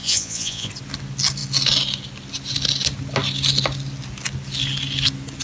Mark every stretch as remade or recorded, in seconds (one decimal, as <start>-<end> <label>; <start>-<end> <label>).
0.0-0.7 remade; 0.7-5.4 recorded